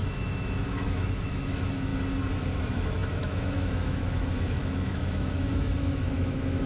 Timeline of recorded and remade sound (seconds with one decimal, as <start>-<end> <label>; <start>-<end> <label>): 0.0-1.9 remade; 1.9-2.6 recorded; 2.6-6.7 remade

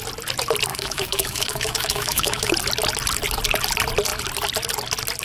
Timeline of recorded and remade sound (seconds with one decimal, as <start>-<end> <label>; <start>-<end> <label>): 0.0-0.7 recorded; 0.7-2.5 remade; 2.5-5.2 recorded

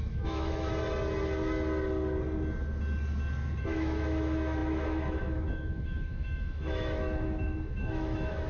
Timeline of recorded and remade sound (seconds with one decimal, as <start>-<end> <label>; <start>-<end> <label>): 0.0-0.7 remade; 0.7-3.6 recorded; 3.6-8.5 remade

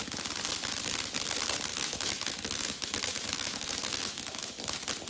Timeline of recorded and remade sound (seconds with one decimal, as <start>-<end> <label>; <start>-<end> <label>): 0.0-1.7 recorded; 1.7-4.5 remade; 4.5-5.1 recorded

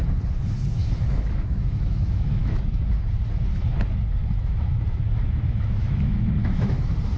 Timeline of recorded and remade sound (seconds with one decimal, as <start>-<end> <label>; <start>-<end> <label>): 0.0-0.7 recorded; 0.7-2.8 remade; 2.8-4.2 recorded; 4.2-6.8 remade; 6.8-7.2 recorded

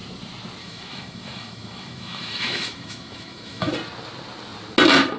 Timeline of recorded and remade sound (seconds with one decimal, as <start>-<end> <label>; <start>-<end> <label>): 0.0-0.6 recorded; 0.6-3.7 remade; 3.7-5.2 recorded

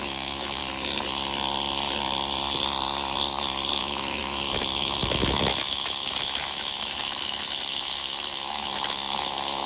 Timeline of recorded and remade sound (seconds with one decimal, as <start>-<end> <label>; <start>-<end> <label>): 0.0-0.6 remade; 0.6-3.8 recorded; 3.8-9.7 remade